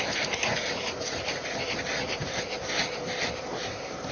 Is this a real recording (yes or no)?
yes